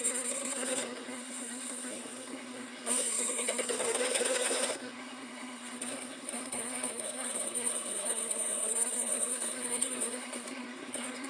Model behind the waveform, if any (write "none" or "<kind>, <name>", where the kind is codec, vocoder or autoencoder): codec, SNAC